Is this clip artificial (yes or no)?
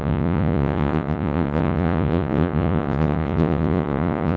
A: yes